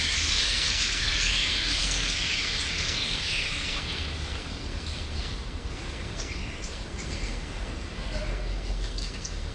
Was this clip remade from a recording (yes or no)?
yes